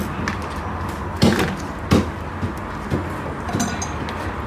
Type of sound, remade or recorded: recorded